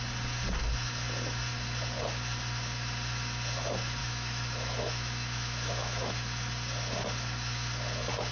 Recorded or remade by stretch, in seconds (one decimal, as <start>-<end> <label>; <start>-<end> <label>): 0.0-4.0 recorded; 4.0-6.1 remade; 6.1-8.3 recorded